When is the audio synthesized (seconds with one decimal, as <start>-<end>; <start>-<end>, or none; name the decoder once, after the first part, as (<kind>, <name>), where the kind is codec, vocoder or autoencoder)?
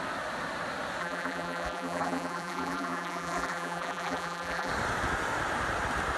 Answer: 1.0-4.7 (vocoder, BigVGAN v2)